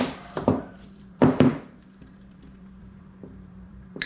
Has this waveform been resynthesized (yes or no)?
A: yes